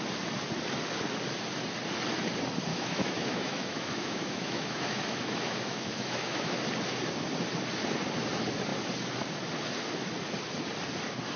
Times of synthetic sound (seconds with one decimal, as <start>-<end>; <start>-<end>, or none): 2.7-6.6